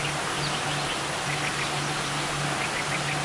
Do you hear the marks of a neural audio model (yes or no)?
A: no